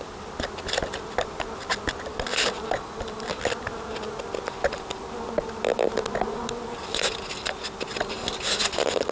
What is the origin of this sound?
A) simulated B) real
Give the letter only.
B